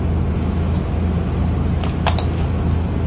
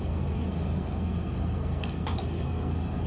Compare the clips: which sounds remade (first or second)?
second